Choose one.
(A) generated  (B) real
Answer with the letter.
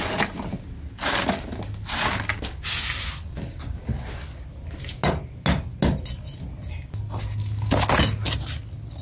B